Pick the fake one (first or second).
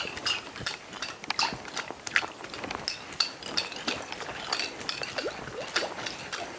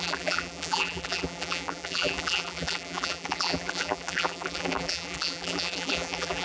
second